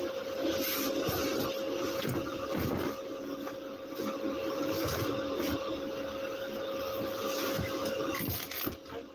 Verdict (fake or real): real